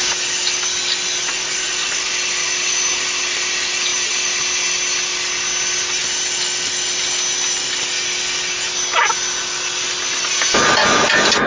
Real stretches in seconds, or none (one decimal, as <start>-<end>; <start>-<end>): 0.0-1.3; 2.1-11.5